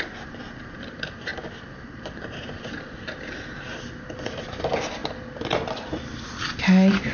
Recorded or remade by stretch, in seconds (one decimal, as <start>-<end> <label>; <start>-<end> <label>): 0.0-7.1 recorded